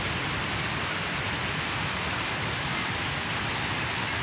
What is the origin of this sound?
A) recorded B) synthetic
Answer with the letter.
A